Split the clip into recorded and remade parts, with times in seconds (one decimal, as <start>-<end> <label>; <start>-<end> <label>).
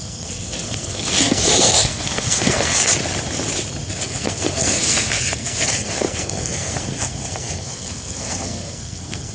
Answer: 0.0-2.9 remade; 2.9-3.9 recorded; 3.9-9.3 remade